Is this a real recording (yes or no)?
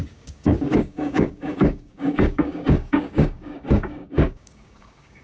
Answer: no